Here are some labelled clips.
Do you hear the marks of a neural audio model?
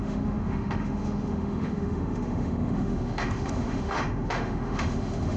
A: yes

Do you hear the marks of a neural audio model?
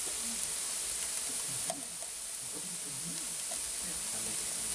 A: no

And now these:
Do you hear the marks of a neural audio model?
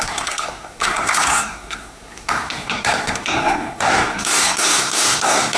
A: yes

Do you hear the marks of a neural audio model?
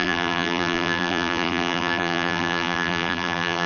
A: yes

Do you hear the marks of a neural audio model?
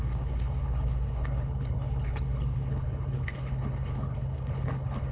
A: yes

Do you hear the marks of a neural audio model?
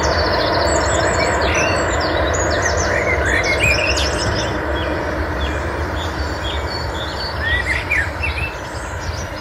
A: no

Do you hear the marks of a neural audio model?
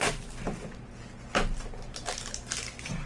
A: no